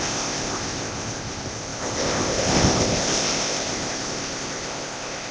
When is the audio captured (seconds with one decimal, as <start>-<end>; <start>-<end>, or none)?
none